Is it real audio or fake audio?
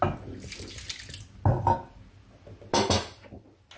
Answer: real